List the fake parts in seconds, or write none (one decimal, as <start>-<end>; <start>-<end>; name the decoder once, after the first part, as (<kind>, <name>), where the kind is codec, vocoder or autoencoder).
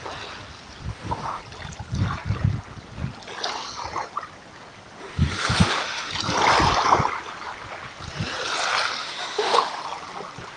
0.9-1.4 (autoencoder, DAC-VAE); 5.0-6.1; 9.0-9.8